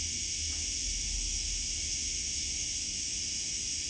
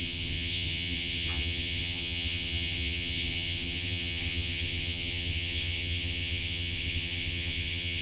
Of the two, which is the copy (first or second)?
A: second